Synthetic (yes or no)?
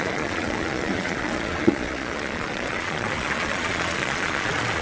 yes